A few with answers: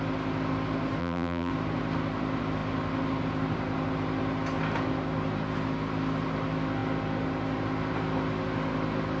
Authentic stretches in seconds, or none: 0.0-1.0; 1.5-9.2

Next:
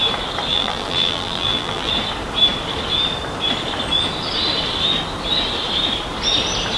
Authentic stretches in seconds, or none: 0.0-0.5; 1.9-6.8

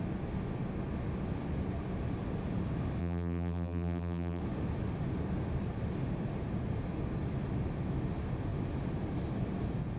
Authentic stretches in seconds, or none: 0.0-3.0; 4.4-10.0